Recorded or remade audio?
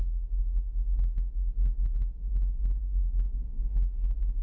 remade